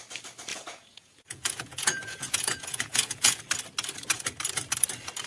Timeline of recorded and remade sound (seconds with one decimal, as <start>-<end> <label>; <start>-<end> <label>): 0.0-0.5 recorded; 0.5-3.4 remade; 3.4-5.3 recorded